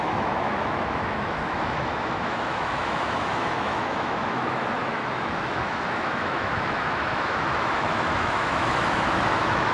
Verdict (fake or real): fake